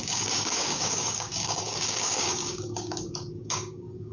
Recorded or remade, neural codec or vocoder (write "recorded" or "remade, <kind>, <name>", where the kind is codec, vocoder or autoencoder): remade, codec, DAC